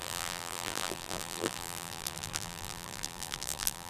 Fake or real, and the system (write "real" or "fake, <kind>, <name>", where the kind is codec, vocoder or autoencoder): fake, vocoder, BigVGAN v2